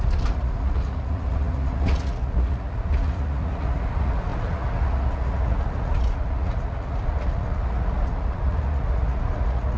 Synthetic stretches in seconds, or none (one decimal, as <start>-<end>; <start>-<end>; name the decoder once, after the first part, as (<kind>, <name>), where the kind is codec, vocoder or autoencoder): 0.0-9.8 (vocoder, Vocos)